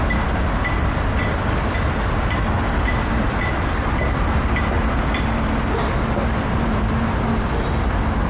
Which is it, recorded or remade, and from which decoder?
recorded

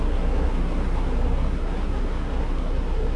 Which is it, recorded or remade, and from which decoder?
remade, codec, SNAC